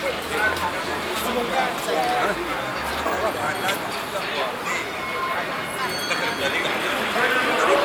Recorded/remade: recorded